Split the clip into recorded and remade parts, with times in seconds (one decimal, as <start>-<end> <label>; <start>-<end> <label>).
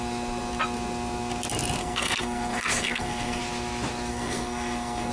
0.0-1.8 recorded; 1.8-3.4 remade; 3.4-4.1 recorded; 4.1-5.1 remade